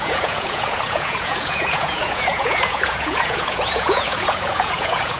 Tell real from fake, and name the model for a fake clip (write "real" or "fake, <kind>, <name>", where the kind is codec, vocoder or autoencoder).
fake, vocoder, Vocos